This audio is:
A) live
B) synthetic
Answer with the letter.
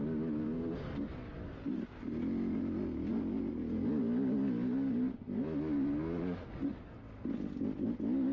A